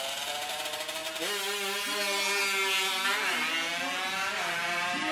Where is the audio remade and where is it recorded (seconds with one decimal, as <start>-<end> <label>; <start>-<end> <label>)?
0.0-5.1 recorded